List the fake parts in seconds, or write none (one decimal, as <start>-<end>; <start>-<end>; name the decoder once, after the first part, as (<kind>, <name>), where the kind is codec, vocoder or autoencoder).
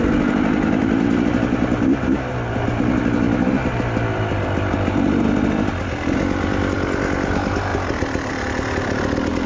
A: none